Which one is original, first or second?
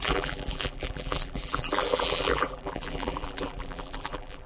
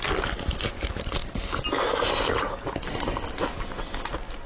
second